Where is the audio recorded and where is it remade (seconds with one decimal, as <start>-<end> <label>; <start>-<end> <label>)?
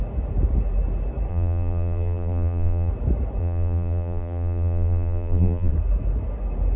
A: 0.0-1.3 recorded; 1.3-2.9 remade; 2.9-3.4 recorded; 3.4-5.7 remade; 5.7-6.8 recorded